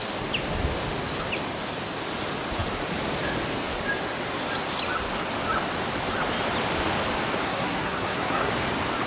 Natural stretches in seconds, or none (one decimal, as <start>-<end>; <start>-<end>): 0.0-7.4; 8.5-9.1